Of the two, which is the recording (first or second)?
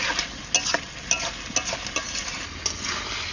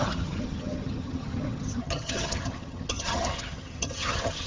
first